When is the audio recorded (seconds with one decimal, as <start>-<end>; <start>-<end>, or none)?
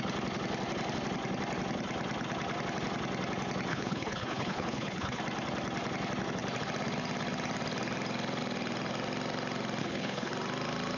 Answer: 0.0-3.7; 5.2-9.8; 10.3-11.0